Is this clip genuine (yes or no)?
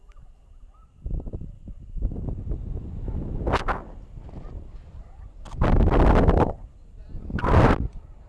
yes